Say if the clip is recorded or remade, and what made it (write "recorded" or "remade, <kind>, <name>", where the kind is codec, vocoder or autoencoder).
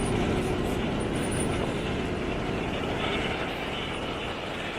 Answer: recorded